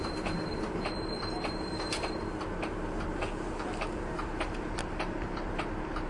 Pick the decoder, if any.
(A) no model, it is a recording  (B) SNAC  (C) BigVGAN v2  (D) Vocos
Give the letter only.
C